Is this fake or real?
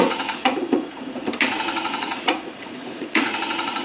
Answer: fake